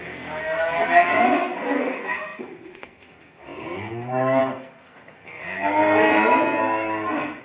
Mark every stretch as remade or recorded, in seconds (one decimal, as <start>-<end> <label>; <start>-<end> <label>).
0.0-6.1 remade; 6.1-6.6 recorded; 6.6-7.4 remade